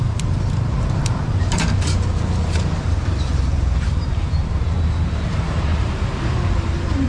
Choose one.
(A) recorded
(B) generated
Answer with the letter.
B